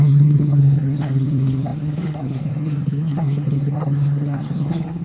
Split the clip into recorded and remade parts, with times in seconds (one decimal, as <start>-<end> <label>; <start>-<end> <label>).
0.0-5.0 remade